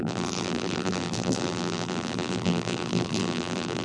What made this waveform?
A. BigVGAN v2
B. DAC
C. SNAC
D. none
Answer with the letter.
A